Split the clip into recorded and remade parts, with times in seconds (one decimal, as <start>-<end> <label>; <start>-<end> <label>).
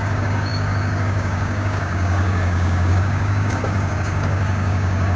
0.0-5.2 remade